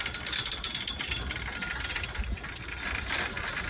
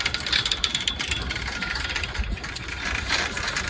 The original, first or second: first